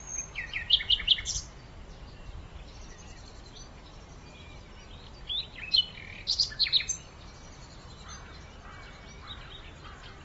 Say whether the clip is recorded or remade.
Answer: recorded